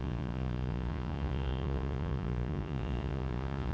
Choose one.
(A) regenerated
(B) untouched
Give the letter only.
A